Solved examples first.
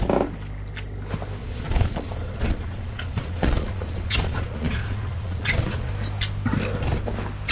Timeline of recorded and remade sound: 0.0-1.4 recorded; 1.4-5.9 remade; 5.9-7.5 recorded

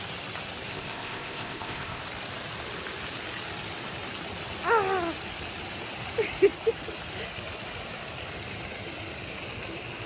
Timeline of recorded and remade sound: 0.0-0.7 recorded; 0.7-2.0 remade; 2.0-10.1 recorded

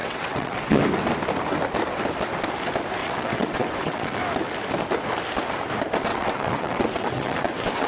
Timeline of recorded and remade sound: 0.0-0.8 remade; 0.8-3.0 recorded; 3.0-4.2 remade; 4.2-6.1 recorded; 6.1-7.9 remade